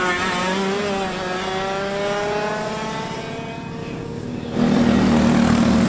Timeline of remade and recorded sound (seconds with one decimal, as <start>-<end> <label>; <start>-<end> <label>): 0.0-3.8 recorded; 3.8-4.5 remade; 4.5-5.9 recorded